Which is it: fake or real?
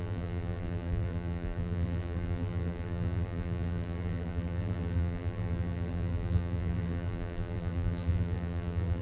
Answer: fake